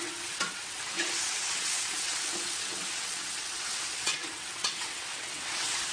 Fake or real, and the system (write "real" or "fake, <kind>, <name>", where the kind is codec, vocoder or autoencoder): fake, vocoder, WaveNeXt